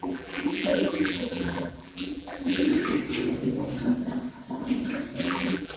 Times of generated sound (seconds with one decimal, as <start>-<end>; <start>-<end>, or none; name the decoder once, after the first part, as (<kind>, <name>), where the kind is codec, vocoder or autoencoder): 0.0-2.7 (vocoder, BigVGAN v2); 5.2-5.8

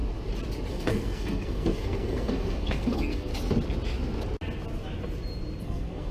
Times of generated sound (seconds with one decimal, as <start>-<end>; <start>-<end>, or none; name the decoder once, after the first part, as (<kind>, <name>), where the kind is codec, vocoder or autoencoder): 0.7-3.3 (codec, SNAC); 5.6-6.1

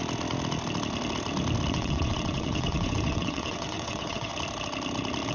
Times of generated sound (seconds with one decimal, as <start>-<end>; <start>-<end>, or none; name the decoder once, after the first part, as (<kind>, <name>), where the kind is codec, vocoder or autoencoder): 1.7-4.3 (vocoder, WaveNeXt)

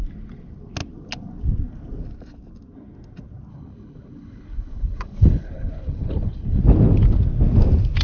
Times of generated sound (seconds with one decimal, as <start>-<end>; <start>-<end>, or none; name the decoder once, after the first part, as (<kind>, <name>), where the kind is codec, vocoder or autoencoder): 3.5-6.6 (codec, HILCodec)

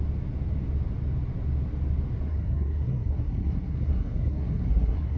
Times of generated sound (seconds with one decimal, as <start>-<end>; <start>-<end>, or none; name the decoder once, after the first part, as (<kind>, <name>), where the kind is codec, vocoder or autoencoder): 2.3-5.2 (codec, SNAC)

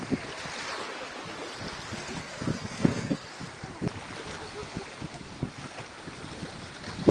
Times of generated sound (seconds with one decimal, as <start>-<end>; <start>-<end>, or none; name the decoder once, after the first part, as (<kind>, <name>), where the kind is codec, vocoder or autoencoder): 2.2-3.3 (codec, SNAC)

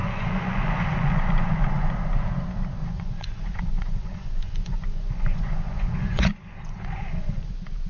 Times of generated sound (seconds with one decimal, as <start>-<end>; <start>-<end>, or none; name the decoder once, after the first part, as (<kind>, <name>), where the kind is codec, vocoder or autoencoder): 0.0-1.9 (vocoder, Vocos); 2.8-7.5

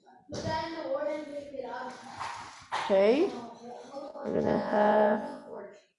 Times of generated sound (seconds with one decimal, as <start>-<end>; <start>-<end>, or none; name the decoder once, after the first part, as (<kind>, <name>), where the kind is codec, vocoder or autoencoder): 4.1-5.6 (vocoder, Vocos)